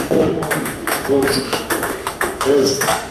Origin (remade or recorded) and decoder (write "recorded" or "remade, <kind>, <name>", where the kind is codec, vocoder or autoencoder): remade, autoencoder, DAC-VAE